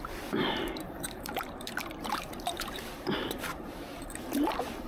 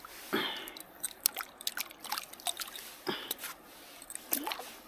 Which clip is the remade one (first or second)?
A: first